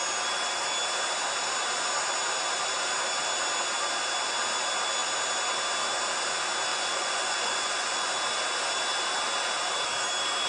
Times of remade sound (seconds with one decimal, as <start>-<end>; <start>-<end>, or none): 6.7-8.1